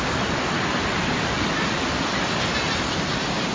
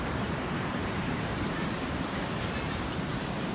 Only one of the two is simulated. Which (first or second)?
second